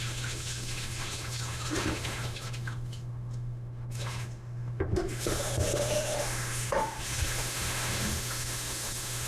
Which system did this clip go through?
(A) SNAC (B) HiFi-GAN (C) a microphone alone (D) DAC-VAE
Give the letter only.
D